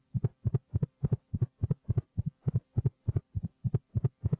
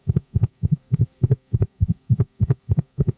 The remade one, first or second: second